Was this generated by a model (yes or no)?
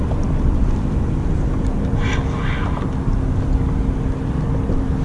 no